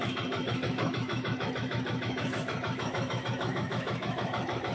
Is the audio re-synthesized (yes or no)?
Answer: yes